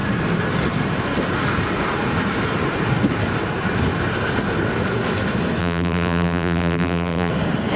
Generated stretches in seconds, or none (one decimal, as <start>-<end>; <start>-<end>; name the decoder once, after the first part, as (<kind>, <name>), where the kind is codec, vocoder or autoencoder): 5.6-7.3 (vocoder, BigVGAN v2)